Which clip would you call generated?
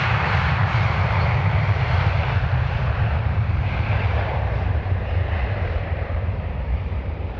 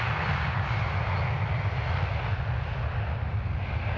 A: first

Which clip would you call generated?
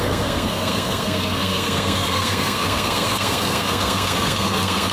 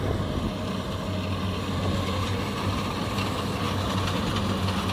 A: first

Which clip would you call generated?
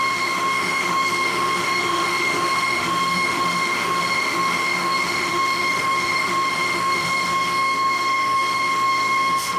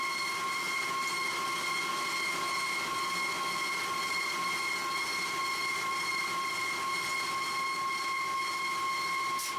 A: first